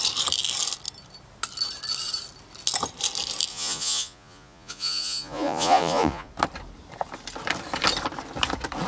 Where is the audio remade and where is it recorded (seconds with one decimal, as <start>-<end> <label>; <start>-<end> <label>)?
0.0-3.5 recorded; 3.5-6.3 remade; 6.3-8.9 recorded